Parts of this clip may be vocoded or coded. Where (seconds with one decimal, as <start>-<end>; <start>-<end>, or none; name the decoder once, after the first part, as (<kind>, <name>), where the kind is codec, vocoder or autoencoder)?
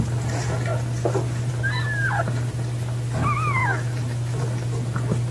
3.6-4.4 (autoencoder, DAC-VAE)